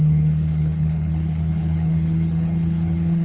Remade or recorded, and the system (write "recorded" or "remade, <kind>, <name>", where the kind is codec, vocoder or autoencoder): remade, codec, HILCodec